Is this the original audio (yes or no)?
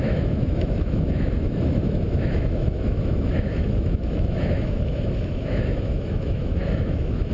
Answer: no